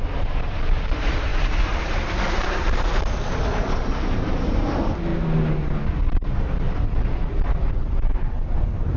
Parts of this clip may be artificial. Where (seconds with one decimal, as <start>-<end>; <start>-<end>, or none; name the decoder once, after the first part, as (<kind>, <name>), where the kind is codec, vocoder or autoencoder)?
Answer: 0.0-5.1 (vocoder, BigVGAN v2); 7.7-9.0